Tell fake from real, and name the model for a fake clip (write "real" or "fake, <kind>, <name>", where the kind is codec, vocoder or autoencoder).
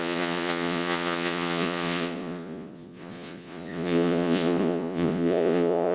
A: fake, vocoder, Vocos